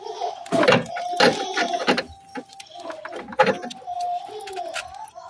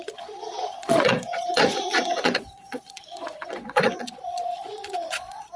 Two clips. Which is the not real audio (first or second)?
second